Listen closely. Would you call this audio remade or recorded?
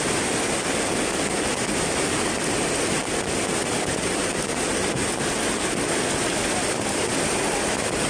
recorded